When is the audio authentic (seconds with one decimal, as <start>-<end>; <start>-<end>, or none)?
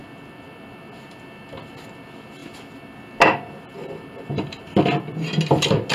0.0-5.9